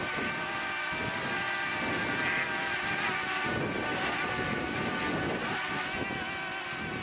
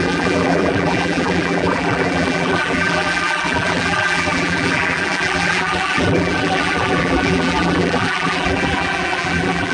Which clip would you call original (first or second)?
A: first